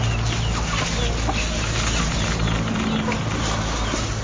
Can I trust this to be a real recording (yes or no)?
yes